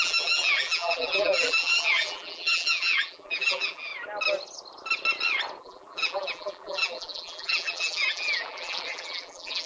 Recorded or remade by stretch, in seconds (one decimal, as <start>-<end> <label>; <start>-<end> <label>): 0.0-3.9 remade; 3.9-5.6 recorded; 5.6-9.7 remade